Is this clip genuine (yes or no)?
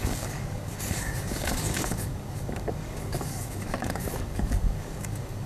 no